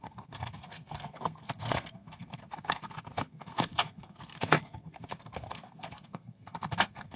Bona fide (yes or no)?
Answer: no